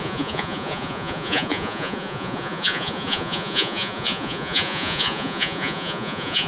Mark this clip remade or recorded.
remade